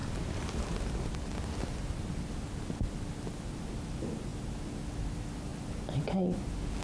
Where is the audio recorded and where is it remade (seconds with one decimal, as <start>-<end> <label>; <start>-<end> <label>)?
0.0-1.9 remade; 1.9-5.5 recorded; 5.5-6.1 remade; 6.1-6.8 recorded